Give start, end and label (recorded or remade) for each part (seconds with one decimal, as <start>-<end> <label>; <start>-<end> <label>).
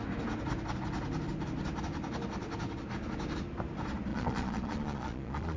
0.0-4.1 recorded; 4.1-5.6 remade